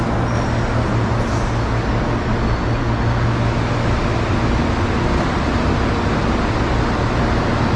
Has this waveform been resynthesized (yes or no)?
no